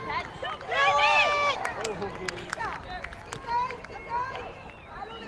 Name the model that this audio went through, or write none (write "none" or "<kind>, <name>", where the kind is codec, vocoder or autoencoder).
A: none